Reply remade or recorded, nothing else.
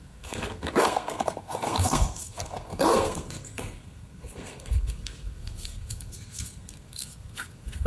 remade